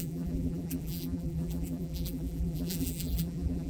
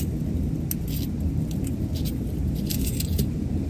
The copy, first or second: first